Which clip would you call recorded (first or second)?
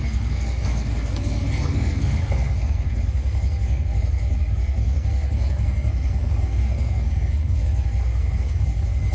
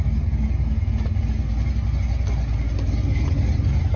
second